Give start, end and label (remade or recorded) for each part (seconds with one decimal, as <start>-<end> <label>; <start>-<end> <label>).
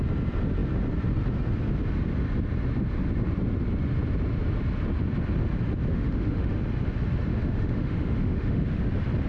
0.0-5.9 recorded; 5.9-6.5 remade; 6.5-7.3 recorded; 7.3-8.8 remade; 8.8-9.3 recorded